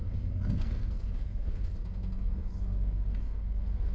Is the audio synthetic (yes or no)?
yes